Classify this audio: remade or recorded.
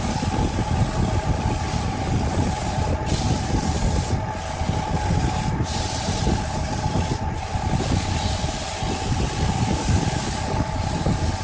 recorded